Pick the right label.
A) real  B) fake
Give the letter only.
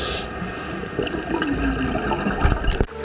A